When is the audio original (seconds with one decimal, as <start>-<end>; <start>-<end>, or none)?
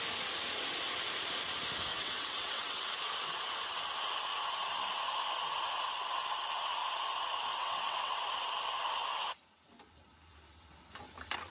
0.0-1.9; 2.8-7.5; 8.2-11.5